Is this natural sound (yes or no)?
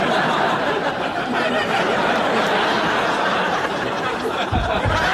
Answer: yes